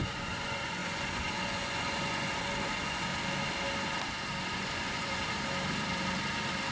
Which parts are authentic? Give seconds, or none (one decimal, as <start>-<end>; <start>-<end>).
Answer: 3.1-4.5; 5.2-6.7